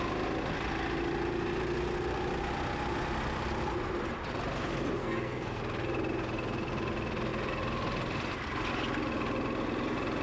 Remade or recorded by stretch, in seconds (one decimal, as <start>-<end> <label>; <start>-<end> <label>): 0.0-5.0 recorded; 5.0-5.6 remade; 5.6-10.2 recorded